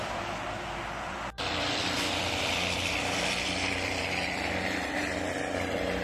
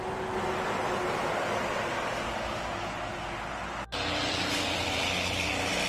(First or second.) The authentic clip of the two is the second